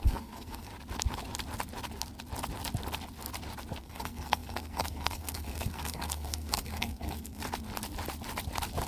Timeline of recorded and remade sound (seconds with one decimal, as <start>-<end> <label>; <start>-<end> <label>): 0.0-0.7 remade; 0.7-3.8 recorded; 3.8-7.4 remade; 7.4-8.9 recorded